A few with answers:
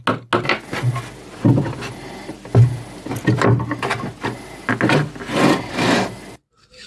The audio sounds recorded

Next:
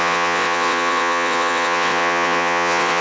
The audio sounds remade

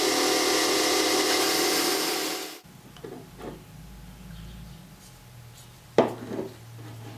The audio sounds recorded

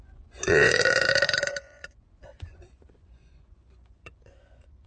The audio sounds remade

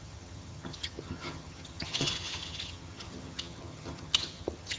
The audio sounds remade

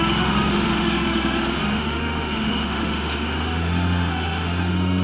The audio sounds remade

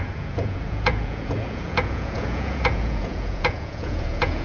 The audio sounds remade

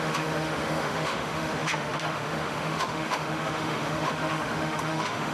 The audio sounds remade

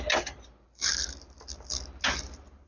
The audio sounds recorded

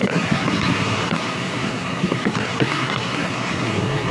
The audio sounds remade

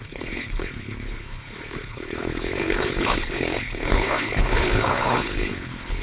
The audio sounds remade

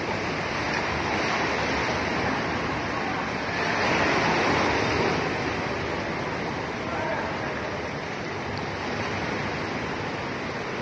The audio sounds recorded